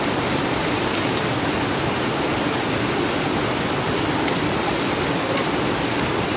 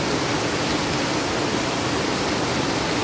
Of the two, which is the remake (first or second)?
first